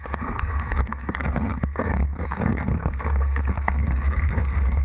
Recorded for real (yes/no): no